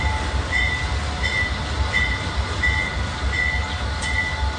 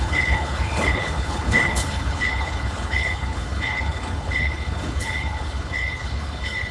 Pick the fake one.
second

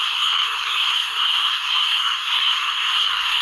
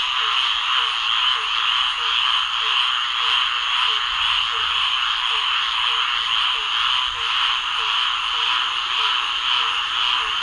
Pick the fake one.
first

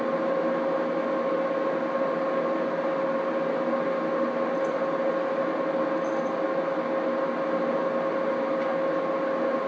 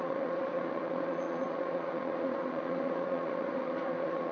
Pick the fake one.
second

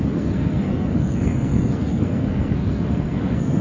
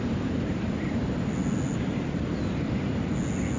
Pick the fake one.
first